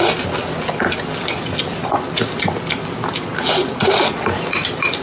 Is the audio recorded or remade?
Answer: recorded